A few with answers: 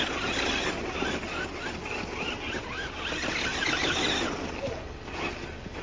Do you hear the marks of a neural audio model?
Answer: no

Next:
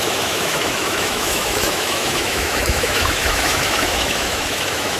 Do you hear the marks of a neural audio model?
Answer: yes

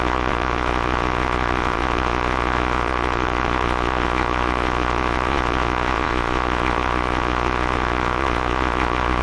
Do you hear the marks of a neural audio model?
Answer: yes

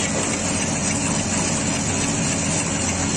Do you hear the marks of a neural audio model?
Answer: no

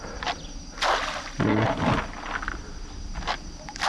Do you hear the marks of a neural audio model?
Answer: no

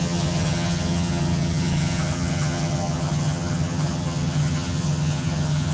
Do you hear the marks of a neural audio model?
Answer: yes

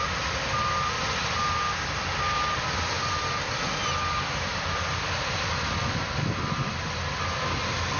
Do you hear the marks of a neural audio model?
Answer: no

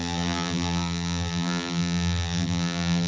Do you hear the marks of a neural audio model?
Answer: yes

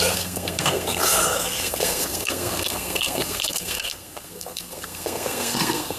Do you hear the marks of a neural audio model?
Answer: yes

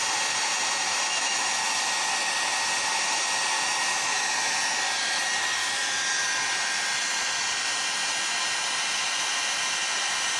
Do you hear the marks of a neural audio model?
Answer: no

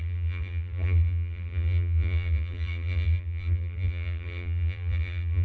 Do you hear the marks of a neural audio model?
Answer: yes